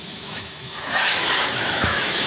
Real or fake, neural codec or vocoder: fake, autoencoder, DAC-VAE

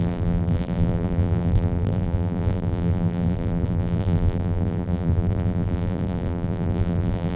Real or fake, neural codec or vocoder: fake, vocoder, BigVGAN v2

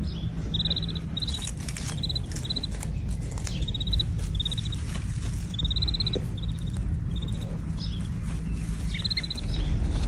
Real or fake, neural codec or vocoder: real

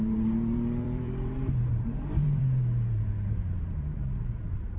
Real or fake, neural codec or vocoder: fake, vocoder, BigVGAN v2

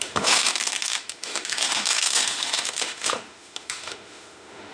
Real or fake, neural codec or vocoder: fake, autoencoder, DAC-VAE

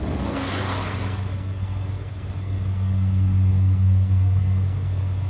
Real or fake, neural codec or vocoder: fake, codec, SNAC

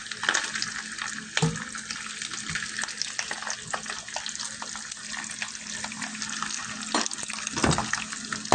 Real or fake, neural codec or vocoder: real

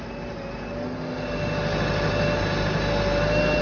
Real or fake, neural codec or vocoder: real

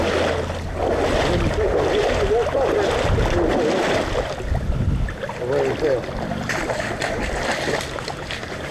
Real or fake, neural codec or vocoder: real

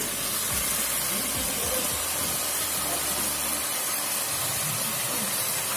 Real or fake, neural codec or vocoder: real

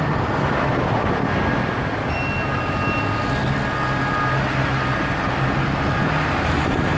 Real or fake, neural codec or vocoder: real